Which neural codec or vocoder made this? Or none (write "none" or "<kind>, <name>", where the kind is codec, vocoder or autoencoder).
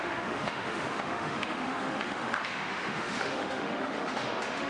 autoencoder, DAC-VAE